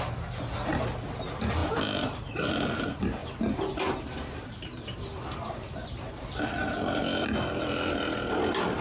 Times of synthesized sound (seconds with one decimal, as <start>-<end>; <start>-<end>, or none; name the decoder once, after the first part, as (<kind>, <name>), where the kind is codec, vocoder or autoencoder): none